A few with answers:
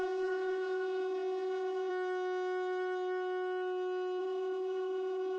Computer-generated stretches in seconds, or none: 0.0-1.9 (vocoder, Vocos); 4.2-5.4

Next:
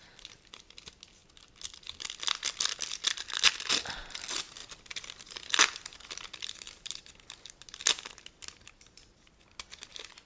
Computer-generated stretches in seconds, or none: none

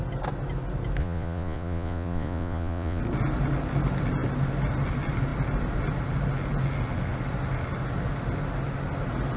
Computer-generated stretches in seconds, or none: 1.0-3.0 (vocoder, Vocos)

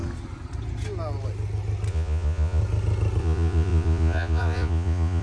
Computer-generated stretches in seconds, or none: 1.9-2.6 (vocoder, Vocos); 3.2-5.2

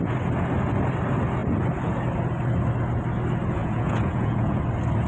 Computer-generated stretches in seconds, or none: 3.6-4.6 (vocoder, Vocos)